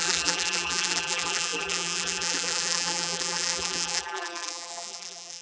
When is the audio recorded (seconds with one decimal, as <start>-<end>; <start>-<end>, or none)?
none